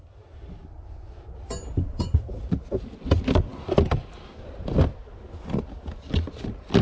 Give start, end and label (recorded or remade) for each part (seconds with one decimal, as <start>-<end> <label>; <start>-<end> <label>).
0.0-6.8 recorded